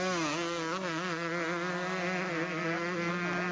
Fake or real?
real